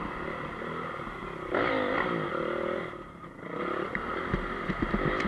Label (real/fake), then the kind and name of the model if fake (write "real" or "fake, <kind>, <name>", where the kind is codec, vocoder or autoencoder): real